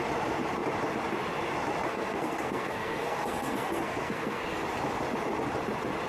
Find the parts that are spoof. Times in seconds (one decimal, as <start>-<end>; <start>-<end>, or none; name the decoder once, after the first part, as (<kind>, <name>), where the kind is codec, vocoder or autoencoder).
1.9-4.4 (codec, SNAC)